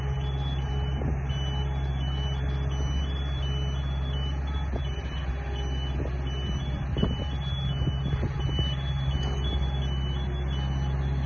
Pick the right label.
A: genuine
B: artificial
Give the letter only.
A